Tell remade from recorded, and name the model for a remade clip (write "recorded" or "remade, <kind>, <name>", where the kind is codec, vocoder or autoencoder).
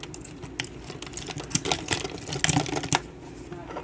recorded